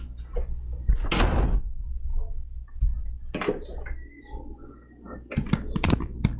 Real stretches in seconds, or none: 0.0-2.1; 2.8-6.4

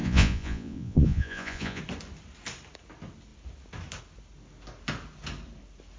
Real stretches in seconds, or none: 1.8-6.0